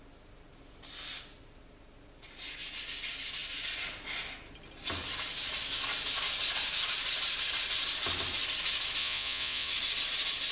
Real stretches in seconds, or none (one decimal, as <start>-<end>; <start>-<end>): 0.0-9.0; 9.7-10.5